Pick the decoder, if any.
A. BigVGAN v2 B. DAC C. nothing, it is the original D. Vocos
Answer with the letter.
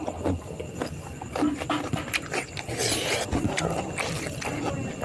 C